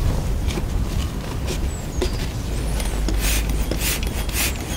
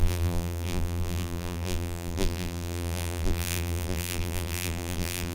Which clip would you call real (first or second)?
first